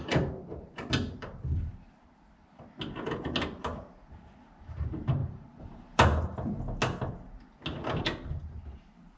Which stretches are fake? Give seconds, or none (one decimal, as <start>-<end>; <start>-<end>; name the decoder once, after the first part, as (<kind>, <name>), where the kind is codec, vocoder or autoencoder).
5.2-6.6 (vocoder, BigVGAN v2)